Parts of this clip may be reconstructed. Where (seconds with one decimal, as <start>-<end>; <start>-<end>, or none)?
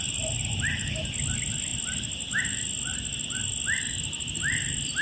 none